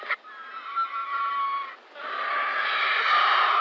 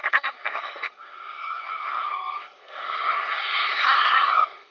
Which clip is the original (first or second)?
first